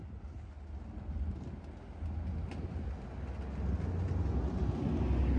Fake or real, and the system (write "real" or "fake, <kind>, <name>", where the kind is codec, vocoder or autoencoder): real